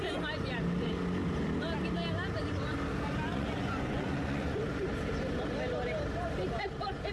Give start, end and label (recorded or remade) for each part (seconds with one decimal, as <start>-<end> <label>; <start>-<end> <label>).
0.0-3.3 recorded; 3.3-4.8 remade; 4.8-7.1 recorded